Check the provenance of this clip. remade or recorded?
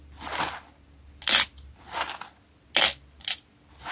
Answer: recorded